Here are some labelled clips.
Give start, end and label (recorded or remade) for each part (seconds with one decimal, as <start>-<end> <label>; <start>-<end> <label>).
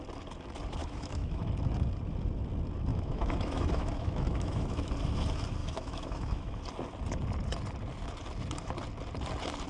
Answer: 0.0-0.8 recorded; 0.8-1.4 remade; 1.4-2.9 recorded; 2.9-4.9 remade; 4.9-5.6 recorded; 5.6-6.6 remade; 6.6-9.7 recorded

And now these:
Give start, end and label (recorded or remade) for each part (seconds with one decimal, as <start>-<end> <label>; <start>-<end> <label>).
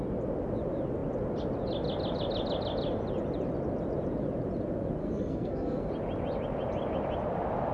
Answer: 0.0-5.0 recorded; 5.0-5.9 remade; 5.9-7.7 recorded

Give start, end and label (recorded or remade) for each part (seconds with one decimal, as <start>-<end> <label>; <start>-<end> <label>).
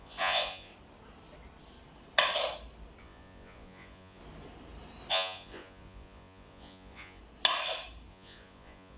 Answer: 0.0-0.7 remade; 0.7-3.0 recorded; 3.0-4.2 remade; 4.2-5.1 recorded; 5.1-7.2 remade; 7.2-8.1 recorded; 8.1-9.0 remade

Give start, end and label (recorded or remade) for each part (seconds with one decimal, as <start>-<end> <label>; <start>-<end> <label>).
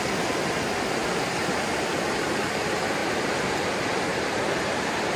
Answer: 0.0-4.1 recorded; 4.1-4.8 remade; 4.8-5.2 recorded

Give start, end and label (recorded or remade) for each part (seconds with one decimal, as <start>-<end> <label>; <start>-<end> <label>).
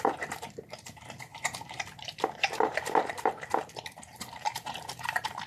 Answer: 0.0-5.5 remade